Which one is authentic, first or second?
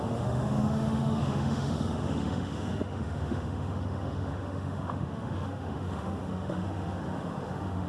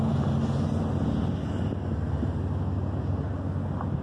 second